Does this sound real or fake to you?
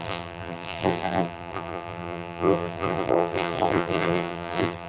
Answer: fake